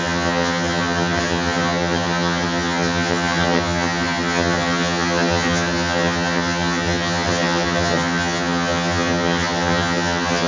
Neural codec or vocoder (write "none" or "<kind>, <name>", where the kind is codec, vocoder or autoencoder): vocoder, HiFi-GAN